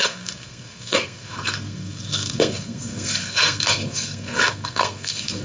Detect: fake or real fake